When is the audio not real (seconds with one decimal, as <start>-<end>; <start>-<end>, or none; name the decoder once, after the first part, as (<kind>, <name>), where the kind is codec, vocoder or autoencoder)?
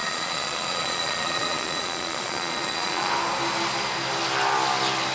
0.0-3.1 (vocoder, Vocos)